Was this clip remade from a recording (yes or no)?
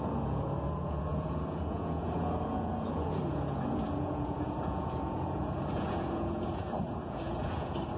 yes